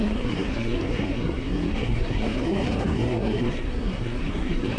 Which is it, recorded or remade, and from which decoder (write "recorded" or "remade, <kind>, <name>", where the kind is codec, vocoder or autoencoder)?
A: remade, codec, SNAC